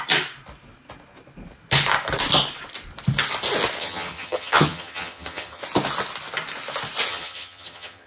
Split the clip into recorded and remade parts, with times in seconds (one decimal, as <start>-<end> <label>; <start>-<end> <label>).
0.0-3.8 recorded; 3.8-5.6 remade; 5.6-7.1 recorded; 7.1-8.1 remade